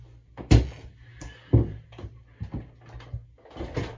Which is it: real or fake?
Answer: real